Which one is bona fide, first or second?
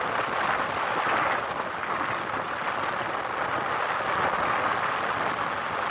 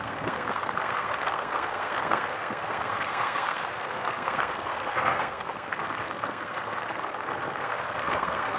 first